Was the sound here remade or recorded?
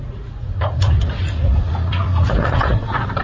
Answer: remade